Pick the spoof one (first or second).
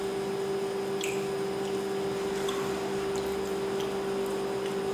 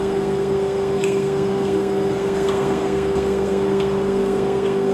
second